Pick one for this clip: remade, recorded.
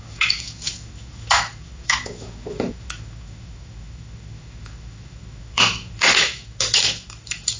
remade